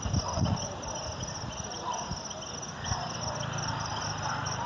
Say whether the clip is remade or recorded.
recorded